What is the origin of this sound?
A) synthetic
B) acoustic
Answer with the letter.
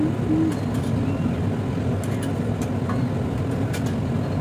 B